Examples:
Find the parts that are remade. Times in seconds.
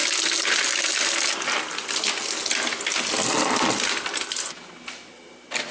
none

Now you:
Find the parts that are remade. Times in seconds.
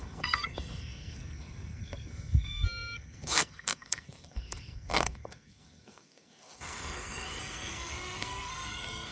0.0-9.1 (codec, SNAC)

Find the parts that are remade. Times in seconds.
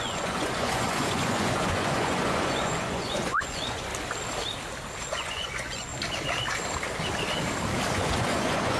0.0-3.9 (vocoder, Vocos); 5.1-5.9; 7.9-8.8